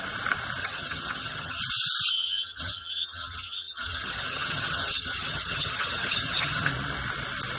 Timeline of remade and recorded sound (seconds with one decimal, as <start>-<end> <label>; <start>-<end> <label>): 0.0-0.6 recorded; 0.6-1.6 remade; 1.6-2.1 recorded; 2.1-6.7 remade; 6.7-7.6 recorded